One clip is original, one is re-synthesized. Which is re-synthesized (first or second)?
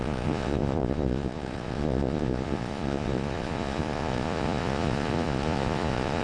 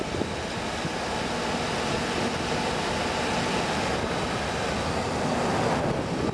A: first